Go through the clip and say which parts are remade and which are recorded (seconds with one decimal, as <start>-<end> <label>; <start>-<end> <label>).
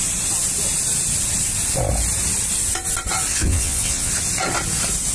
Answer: 0.0-3.3 recorded; 3.3-4.1 remade; 4.1-5.1 recorded